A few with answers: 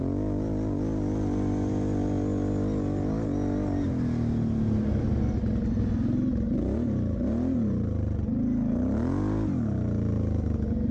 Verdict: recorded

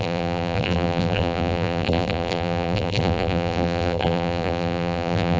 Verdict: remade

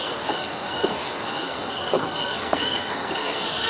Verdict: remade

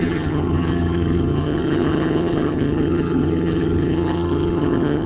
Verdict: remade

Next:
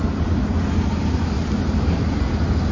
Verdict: recorded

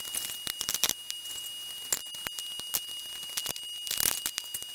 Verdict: recorded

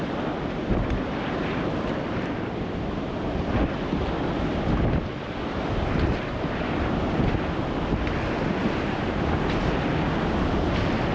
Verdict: recorded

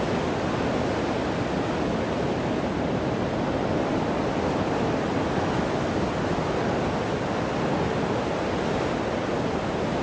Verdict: recorded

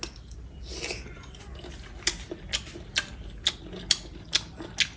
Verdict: recorded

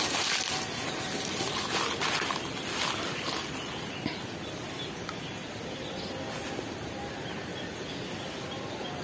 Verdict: recorded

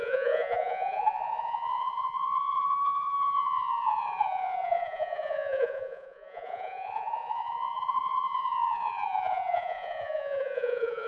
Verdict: remade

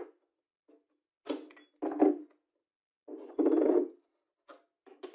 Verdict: recorded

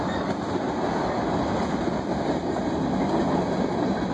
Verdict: recorded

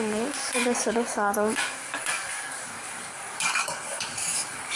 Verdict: remade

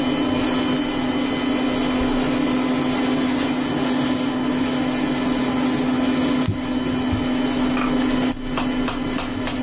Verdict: recorded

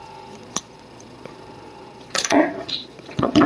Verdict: remade